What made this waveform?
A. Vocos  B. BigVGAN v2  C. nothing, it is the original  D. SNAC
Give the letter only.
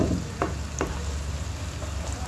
C